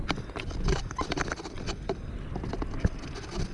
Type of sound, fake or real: real